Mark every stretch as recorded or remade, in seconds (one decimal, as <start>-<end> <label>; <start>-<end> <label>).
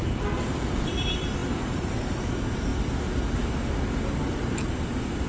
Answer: 0.0-0.5 recorded; 0.5-2.7 remade; 2.7-5.3 recorded